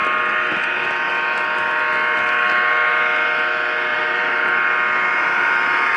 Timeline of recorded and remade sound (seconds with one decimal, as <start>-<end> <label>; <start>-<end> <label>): 0.0-3.9 recorded; 3.9-4.5 remade; 4.5-5.2 recorded; 5.2-6.0 remade